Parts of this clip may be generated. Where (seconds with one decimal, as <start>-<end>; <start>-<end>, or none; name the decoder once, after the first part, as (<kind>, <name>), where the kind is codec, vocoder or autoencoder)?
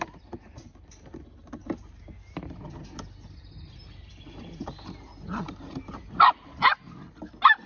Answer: none